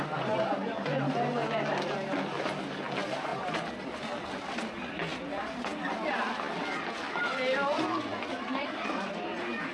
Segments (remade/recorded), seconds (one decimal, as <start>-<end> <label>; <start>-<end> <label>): 0.0-9.7 recorded